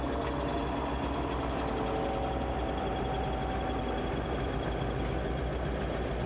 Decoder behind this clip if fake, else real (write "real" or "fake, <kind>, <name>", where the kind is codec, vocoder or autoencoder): real